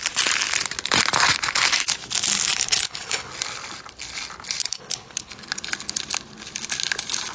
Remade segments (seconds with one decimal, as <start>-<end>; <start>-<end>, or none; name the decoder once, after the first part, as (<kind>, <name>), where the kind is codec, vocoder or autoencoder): 2.5-3.3 (codec, HILCodec); 4.6-5.3